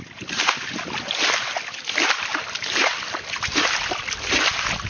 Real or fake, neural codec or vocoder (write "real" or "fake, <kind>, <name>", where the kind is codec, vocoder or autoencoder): real